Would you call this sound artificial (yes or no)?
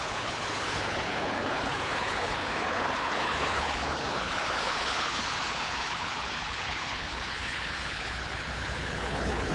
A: yes